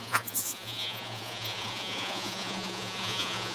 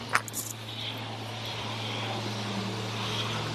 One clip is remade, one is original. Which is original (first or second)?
second